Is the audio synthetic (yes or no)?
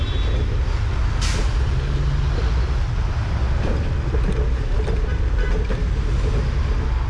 no